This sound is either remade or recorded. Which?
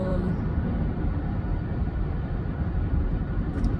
remade